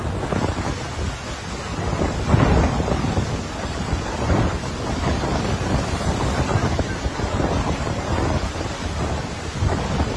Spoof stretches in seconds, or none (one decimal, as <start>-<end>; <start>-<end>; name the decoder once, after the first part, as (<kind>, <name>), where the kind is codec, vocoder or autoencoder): 1.7-6.4 (vocoder, BigVGAN v2)